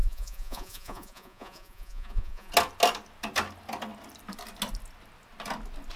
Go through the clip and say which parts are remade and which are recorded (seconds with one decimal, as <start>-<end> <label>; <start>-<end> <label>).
0.0-2.5 remade; 2.5-6.0 recorded